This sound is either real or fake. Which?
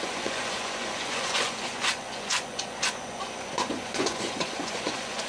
fake